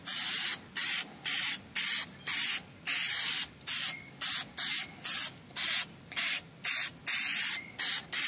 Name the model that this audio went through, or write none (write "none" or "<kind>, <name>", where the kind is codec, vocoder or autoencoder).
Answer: none